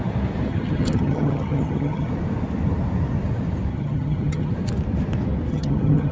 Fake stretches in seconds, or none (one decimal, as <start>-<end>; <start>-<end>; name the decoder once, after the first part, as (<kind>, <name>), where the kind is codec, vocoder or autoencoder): 0.5-2.1 (vocoder, HiFi-GAN); 3.7-4.5; 5.5-6.1